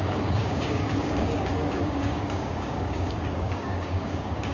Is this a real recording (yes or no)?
no